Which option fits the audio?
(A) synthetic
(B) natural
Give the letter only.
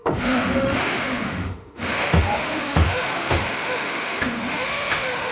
A